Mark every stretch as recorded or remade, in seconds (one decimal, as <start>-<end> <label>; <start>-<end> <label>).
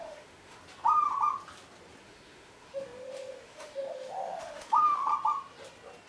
0.0-0.6 remade; 0.6-2.0 recorded; 2.0-5.1 remade; 5.1-6.1 recorded